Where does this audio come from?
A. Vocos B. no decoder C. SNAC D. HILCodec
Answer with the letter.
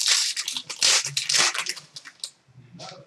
B